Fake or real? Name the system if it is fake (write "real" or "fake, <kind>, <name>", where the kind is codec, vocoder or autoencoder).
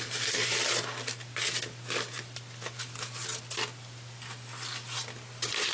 real